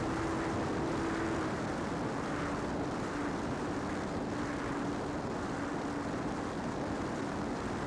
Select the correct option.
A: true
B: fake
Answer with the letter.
B